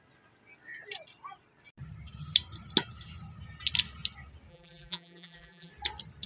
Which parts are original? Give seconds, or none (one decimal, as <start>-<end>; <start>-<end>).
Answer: 0.0-4.5; 5.7-6.3